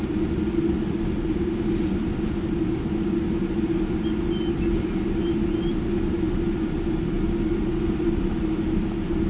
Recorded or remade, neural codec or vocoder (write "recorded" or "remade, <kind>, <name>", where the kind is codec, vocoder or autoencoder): recorded